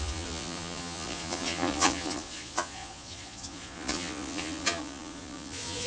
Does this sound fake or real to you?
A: fake